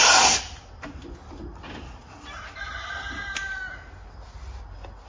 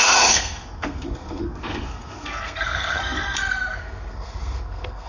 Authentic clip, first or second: first